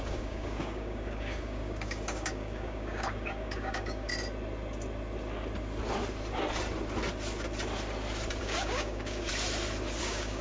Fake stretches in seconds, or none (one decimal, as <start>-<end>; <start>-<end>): 0.0-4.1; 8.4-9.3; 10.0-10.4